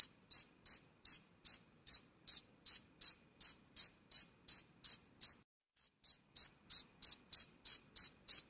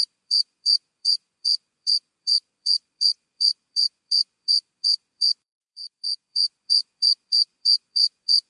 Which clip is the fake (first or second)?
second